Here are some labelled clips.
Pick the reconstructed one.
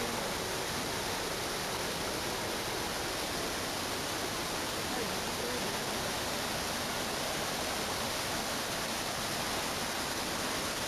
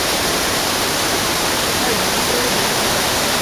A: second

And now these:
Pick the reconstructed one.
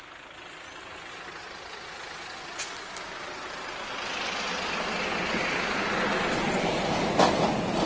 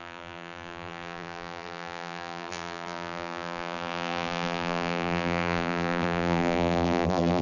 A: second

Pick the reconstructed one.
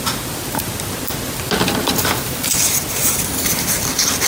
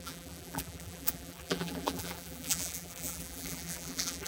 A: second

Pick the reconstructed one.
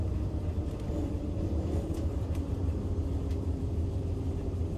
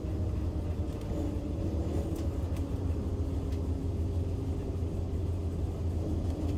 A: first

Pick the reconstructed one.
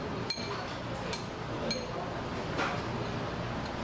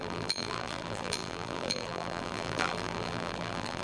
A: second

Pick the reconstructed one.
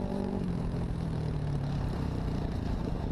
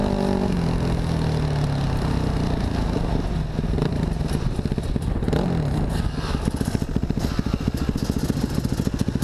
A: first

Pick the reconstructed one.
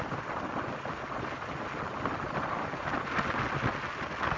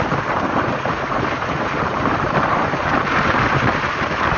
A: second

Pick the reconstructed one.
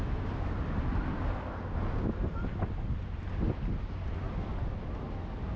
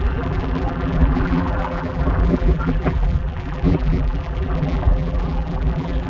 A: second